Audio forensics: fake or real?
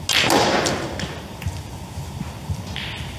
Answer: real